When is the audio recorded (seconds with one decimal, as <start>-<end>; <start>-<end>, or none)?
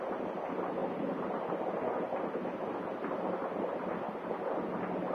0.0-5.1